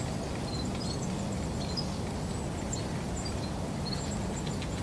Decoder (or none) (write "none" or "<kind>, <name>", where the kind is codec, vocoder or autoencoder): none